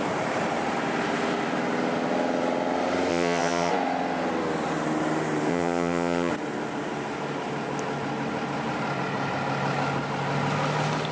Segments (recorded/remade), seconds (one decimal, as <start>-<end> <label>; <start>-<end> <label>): 0.0-3.1 recorded; 3.1-3.7 remade; 3.7-5.5 recorded; 5.5-6.3 remade; 6.3-11.1 recorded